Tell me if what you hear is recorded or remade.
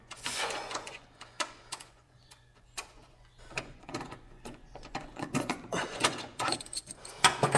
remade